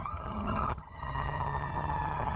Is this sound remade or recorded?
remade